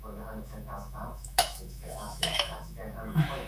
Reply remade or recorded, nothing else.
remade